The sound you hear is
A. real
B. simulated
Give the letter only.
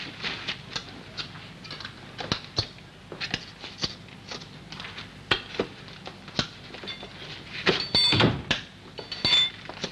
A